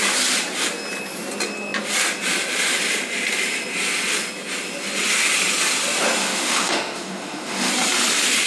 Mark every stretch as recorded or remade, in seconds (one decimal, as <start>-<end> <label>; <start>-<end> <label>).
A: 0.0-6.2 recorded; 6.2-7.7 remade; 7.7-8.5 recorded